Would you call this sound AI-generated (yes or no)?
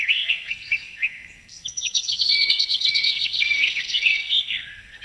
yes